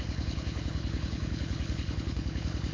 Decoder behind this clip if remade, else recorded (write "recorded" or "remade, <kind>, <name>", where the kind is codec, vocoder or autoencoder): remade, codec, HILCodec